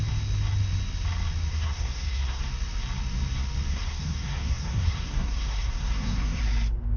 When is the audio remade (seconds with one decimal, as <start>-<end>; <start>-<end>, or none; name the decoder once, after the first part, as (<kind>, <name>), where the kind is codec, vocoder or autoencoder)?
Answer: 1.5-2.4 (codec, SNAC); 3.7-6.4